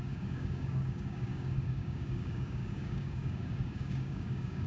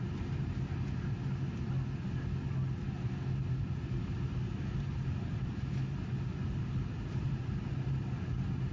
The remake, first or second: first